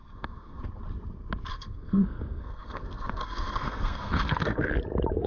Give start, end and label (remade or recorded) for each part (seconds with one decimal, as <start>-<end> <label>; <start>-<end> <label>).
0.0-0.6 remade; 0.6-1.5 recorded; 1.5-4.7 remade; 4.7-5.3 recorded